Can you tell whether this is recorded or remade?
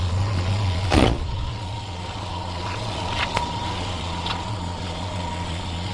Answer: remade